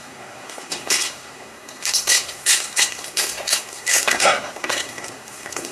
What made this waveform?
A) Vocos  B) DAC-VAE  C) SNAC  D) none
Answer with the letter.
C